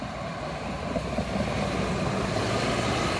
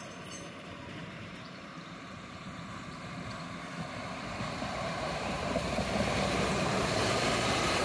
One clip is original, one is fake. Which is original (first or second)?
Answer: first